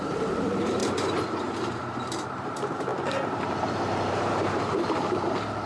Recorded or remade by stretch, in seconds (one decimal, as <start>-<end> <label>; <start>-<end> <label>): 0.0-0.8 remade; 0.8-1.5 recorded; 1.5-2.9 remade; 2.9-4.1 recorded; 4.1-5.7 remade